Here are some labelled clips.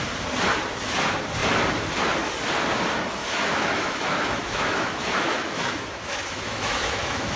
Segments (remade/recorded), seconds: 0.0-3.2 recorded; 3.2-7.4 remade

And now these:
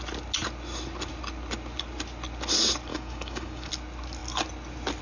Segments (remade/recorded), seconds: 0.0-2.9 recorded; 2.9-3.7 remade; 3.7-5.0 recorded

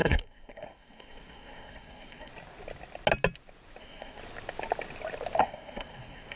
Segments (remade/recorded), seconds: 0.0-2.3 remade; 2.3-3.8 recorded; 3.8-4.2 remade; 4.2-5.4 recorded; 5.4-6.4 remade

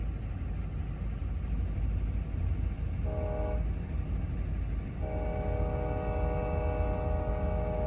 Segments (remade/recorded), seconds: 0.0-7.9 recorded

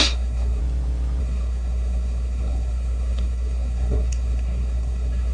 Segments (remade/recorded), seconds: 0.0-0.6 remade; 0.6-1.2 recorded; 1.2-5.3 remade

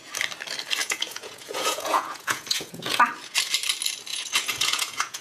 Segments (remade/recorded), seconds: 0.0-0.8 recorded; 0.8-3.0 remade; 3.0-4.1 recorded; 4.1-5.2 remade